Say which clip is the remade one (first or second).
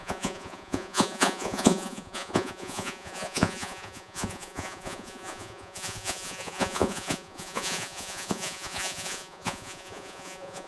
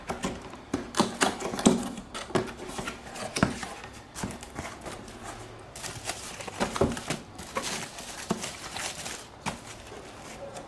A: first